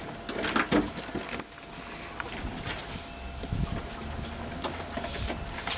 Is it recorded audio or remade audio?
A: recorded